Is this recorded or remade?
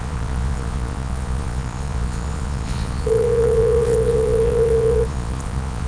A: remade